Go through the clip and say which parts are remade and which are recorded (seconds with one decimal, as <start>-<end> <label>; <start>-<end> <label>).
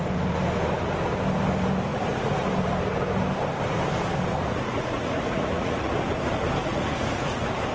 0.0-1.9 recorded; 1.9-2.5 remade; 2.5-4.3 recorded; 4.3-5.9 remade; 5.9-6.6 recorded; 6.6-7.7 remade